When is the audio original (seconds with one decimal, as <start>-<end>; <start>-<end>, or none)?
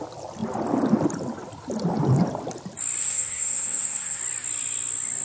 0.0-3.0; 4.2-5.2